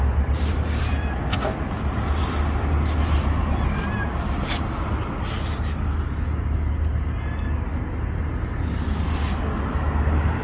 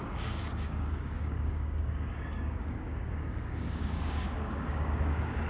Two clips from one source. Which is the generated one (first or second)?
second